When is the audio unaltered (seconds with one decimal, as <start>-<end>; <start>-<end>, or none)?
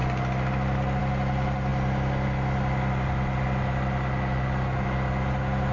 0.0-5.7